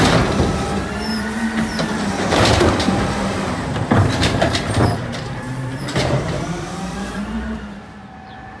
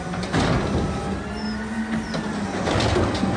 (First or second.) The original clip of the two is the second